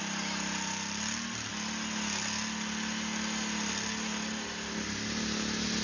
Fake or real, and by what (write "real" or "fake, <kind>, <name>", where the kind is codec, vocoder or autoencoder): real